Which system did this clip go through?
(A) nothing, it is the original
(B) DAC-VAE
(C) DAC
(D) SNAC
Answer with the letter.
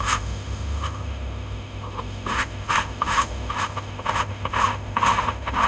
B